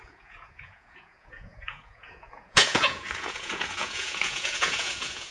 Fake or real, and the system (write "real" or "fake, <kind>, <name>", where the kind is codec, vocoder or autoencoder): fake, vocoder, Vocos